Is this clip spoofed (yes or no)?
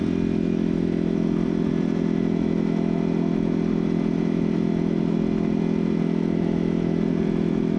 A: no